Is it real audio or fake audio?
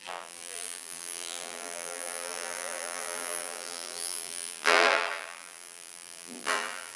fake